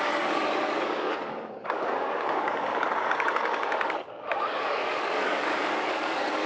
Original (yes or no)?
no